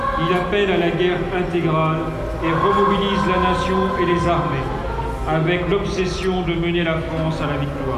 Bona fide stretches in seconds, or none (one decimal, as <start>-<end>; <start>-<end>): 0.0-8.0